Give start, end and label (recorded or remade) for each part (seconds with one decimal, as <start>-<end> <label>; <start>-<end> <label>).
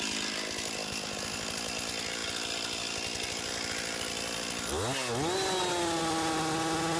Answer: 0.0-7.0 recorded